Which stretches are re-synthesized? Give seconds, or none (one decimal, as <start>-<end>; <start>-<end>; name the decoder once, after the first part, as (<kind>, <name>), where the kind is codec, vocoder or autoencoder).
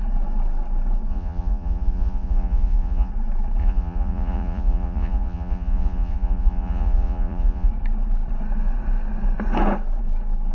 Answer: 1.1-3.1 (vocoder, Vocos); 3.6-7.7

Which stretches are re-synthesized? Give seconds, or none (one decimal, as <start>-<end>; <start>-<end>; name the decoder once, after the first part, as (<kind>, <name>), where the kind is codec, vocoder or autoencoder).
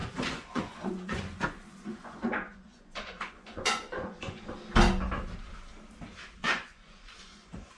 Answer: 0.0-4.4 (vocoder, Vocos); 6.4-7.8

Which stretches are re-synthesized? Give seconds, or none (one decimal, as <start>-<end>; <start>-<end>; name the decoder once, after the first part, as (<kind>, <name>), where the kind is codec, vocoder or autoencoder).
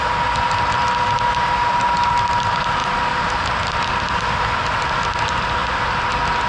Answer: none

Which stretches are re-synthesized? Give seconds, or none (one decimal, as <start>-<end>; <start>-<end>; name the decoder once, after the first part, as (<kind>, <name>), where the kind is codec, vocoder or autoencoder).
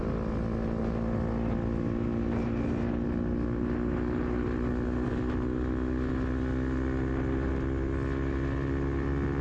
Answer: none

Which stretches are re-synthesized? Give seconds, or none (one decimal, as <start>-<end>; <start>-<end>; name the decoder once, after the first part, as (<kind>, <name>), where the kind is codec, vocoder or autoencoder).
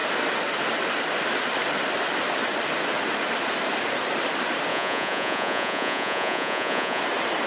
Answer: 4.7-7.0 (vocoder, Vocos)